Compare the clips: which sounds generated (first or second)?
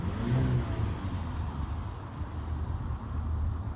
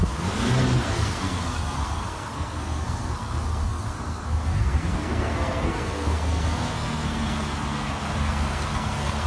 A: second